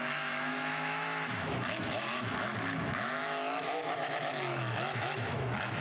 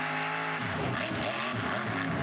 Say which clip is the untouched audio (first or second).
second